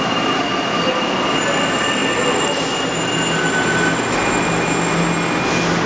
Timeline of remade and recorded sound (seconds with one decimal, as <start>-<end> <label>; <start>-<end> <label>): 0.0-5.9 recorded